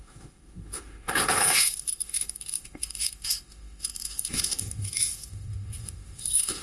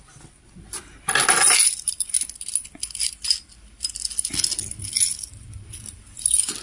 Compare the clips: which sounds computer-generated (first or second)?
first